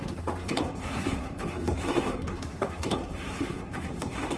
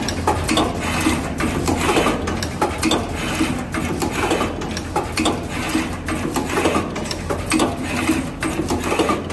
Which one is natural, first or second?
second